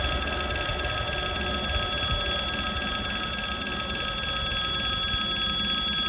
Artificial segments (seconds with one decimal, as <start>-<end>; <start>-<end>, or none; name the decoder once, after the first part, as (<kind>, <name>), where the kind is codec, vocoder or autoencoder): none